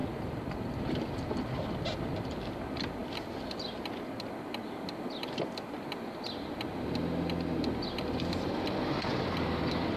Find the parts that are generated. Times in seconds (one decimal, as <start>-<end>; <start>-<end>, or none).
3.0-3.5; 9.1-10.0

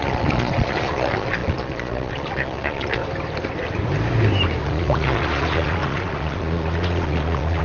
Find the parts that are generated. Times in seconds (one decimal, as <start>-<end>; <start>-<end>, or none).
0.0-3.0; 4.6-7.6